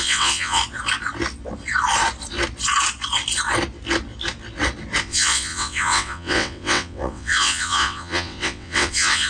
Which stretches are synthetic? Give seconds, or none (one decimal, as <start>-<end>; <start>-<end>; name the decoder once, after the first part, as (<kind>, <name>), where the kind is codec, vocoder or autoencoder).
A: 0.0-0.6 (vocoder, WaveNeXt); 5.0-9.3